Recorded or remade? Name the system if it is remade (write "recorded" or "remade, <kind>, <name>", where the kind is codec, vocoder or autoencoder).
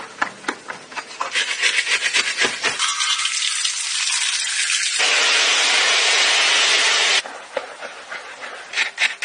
recorded